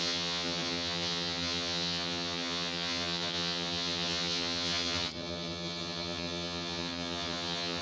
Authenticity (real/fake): fake